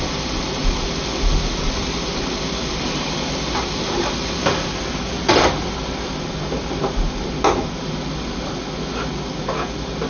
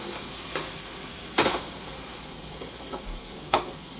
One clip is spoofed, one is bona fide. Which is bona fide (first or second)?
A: first